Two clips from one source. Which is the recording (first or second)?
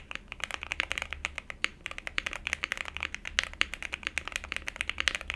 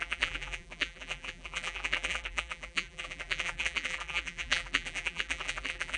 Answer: first